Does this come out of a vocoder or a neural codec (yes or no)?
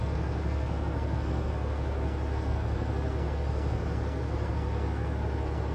yes